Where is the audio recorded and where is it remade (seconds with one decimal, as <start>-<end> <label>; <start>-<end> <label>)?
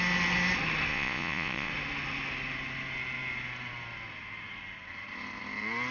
0.0-0.9 recorded; 0.9-1.7 remade; 1.7-5.9 recorded